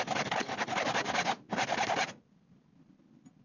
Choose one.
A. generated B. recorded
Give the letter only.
B